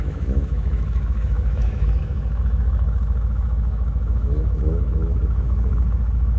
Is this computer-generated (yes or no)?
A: yes